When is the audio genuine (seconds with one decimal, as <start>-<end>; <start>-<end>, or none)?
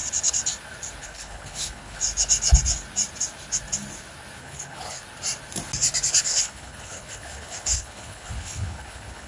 0.0-1.0; 2.0-4.4; 5.0-6.2